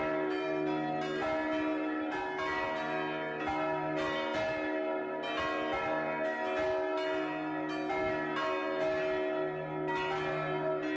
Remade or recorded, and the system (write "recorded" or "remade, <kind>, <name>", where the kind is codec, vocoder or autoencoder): recorded